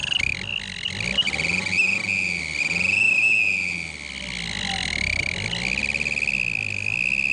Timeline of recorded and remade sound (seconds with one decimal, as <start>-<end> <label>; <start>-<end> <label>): 0.0-7.3 recorded